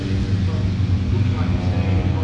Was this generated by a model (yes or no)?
no